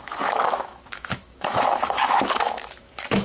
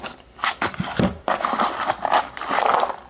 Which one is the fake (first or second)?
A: first